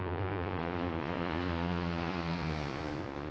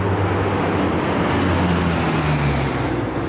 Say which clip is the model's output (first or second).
first